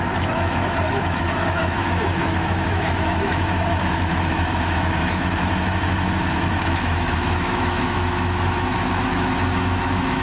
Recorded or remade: remade